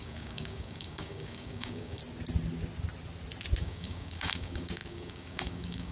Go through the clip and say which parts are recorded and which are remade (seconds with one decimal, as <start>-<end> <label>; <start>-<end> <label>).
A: 0.0-2.0 remade; 2.0-3.6 recorded; 3.6-5.9 remade